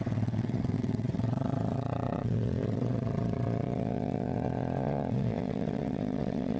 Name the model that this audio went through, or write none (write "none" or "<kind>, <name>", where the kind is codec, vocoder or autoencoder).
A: vocoder, WaveNeXt